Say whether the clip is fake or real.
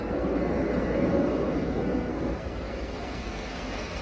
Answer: fake